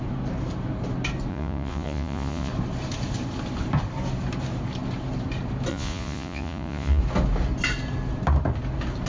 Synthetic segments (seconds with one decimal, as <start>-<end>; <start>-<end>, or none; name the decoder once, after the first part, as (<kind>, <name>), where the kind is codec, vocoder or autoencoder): 1.3-2.5 (vocoder, Vocos); 5.7-7.0